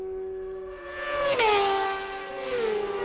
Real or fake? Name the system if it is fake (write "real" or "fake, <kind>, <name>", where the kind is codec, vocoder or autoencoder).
real